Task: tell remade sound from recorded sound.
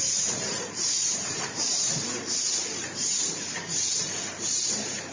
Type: remade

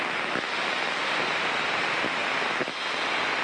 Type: recorded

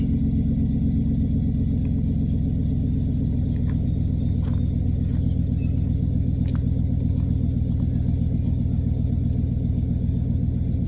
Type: recorded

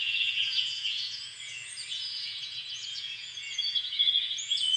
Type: remade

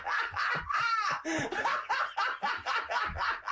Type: recorded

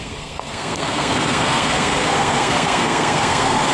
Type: remade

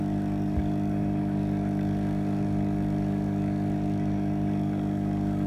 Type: remade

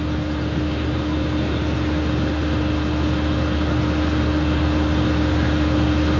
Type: recorded